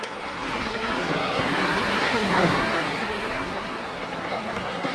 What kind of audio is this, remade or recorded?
remade